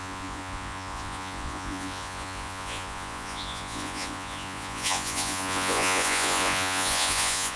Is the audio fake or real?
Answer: fake